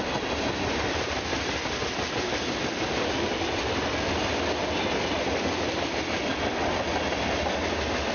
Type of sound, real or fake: real